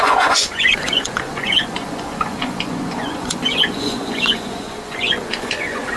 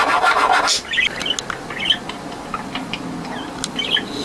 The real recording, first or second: second